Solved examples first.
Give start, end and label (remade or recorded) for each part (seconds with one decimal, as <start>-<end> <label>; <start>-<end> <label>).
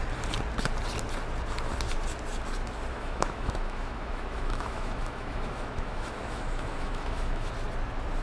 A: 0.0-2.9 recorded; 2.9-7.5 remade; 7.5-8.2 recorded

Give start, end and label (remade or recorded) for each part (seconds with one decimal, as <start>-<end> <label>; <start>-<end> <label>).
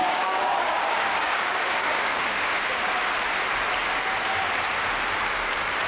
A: 0.0-2.9 remade; 2.9-5.9 recorded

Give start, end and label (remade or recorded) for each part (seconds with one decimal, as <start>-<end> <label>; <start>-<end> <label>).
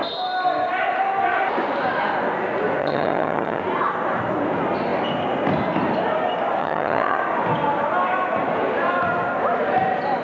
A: 0.0-2.8 recorded; 2.8-3.6 remade; 3.6-6.6 recorded; 6.6-7.2 remade; 7.2-10.2 recorded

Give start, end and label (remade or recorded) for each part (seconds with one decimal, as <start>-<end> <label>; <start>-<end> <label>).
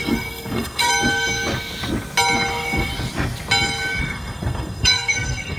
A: 0.0-0.9 remade; 0.9-2.5 recorded; 2.5-2.9 remade; 2.9-4.0 recorded; 4.0-5.6 remade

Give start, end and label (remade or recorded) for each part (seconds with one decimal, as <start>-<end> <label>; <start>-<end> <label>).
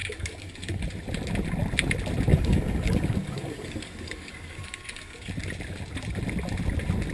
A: 0.0-0.8 remade; 0.8-2.3 recorded; 2.3-5.3 remade; 5.3-7.1 recorded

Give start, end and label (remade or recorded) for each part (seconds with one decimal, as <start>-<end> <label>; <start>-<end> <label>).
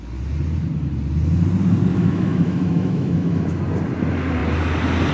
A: 0.0-1.9 recorded; 1.9-3.6 remade; 3.6-5.1 recorded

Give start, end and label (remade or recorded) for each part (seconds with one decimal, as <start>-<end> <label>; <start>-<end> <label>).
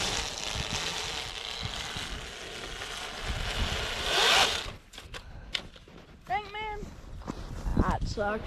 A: 0.0-8.5 recorded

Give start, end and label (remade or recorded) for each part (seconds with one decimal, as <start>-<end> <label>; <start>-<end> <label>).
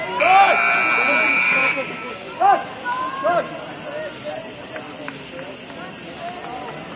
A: 0.0-1.3 recorded; 1.3-2.4 remade; 2.4-7.0 recorded